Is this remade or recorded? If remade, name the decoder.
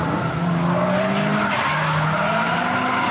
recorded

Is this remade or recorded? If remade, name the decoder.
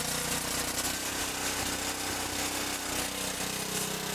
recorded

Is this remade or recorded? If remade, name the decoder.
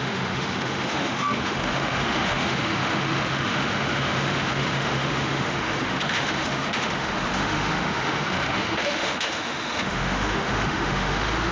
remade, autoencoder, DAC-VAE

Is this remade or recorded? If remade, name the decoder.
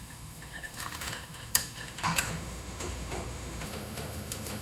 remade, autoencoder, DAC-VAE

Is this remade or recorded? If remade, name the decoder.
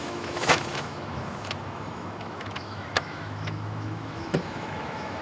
remade, autoencoder, DAC-VAE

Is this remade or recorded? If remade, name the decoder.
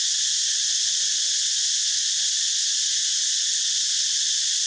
recorded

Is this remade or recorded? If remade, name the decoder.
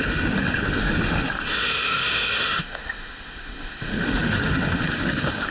remade, autoencoder, DAC-VAE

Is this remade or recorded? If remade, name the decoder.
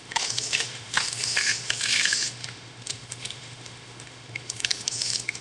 remade, autoencoder, DAC-VAE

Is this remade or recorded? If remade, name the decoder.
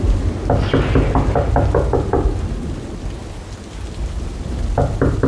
recorded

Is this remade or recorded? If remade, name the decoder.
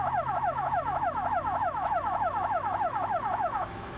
remade, autoencoder, DAC-VAE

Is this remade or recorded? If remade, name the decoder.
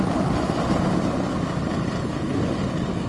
recorded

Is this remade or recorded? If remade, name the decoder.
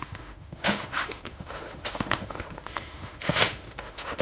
remade, autoencoder, DAC-VAE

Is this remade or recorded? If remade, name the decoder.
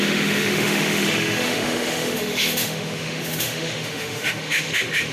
remade, autoencoder, DAC-VAE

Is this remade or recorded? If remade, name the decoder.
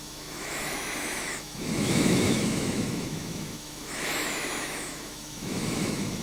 remade, autoencoder, DAC-VAE